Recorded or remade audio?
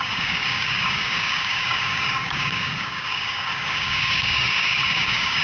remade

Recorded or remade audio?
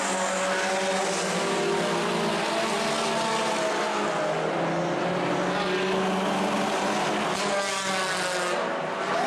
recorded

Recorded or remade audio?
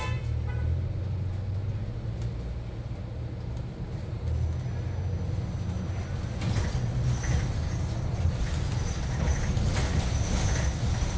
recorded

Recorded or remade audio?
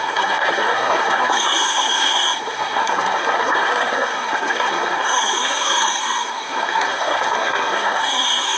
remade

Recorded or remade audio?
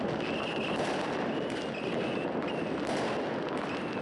recorded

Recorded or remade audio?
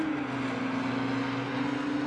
recorded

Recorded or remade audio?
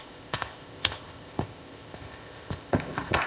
remade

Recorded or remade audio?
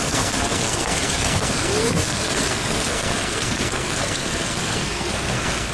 remade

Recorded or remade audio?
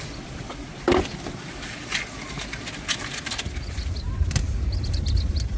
recorded